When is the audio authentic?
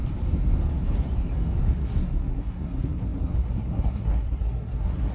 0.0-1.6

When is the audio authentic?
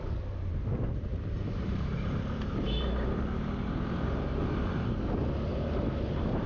0.0-1.1; 5.0-5.5